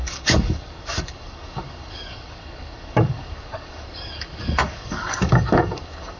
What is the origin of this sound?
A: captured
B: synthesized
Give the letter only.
B